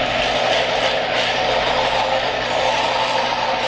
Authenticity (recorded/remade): recorded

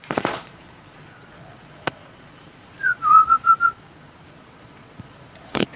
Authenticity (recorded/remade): remade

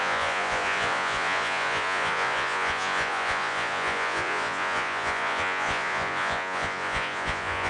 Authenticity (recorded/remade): remade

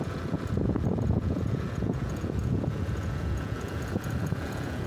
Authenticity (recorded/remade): remade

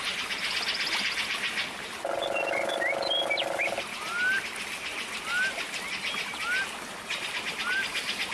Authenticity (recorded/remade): recorded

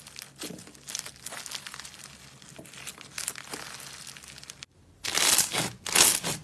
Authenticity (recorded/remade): recorded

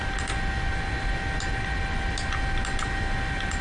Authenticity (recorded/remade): recorded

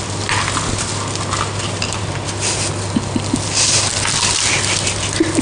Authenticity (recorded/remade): recorded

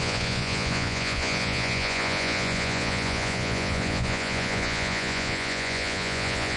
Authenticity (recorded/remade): remade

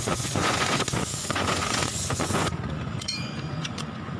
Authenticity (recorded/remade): remade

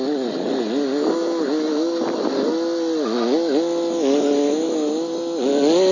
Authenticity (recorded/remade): recorded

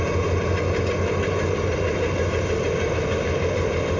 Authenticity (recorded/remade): recorded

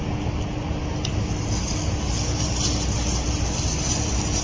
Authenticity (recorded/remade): recorded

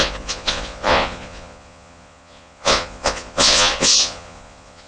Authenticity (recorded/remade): remade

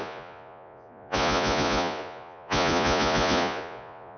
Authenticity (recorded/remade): remade